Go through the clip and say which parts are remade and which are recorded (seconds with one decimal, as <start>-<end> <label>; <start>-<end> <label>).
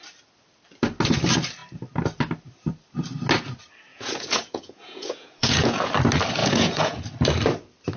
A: 0.0-3.9 recorded; 3.9-5.9 remade; 5.9-6.4 recorded; 6.4-7.0 remade; 7.0-8.0 recorded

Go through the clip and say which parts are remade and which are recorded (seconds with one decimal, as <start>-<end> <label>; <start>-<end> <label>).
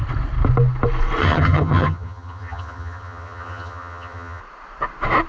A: 0.0-1.2 recorded; 1.2-4.4 remade; 4.4-5.3 recorded